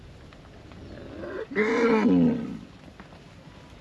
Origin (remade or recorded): recorded